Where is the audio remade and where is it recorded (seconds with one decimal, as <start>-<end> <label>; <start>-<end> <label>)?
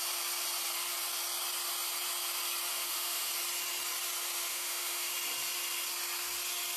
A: 0.0-2.7 recorded; 2.7-3.3 remade; 3.3-4.5 recorded; 4.5-5.1 remade; 5.1-6.8 recorded